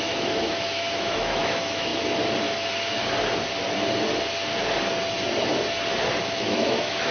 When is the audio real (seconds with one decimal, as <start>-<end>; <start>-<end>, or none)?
1.9-6.2